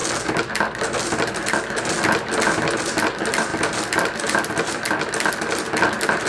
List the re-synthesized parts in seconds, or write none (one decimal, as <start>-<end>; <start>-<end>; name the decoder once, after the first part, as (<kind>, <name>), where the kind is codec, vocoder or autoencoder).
0.0-0.5 (vocoder, BigVGAN v2); 3.5-5.3